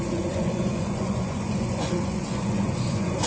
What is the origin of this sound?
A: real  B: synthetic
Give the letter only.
B